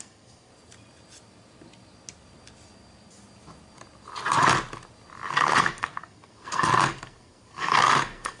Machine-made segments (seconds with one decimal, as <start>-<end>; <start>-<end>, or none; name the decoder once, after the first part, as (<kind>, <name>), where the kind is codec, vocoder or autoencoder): 0.0-0.5 (codec, SNAC); 5.3-8.4